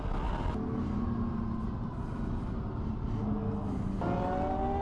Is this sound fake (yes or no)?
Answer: no